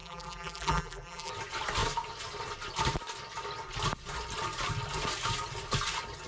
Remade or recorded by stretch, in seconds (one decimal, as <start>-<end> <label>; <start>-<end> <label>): 0.0-1.3 remade; 1.3-6.3 recorded